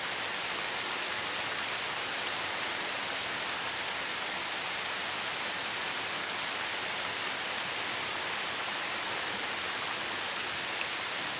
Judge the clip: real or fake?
real